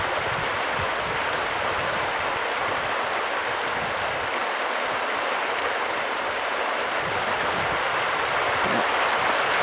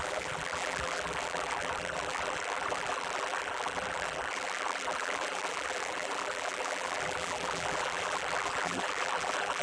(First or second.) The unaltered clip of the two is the first